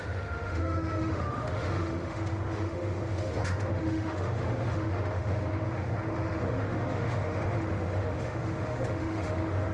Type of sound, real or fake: fake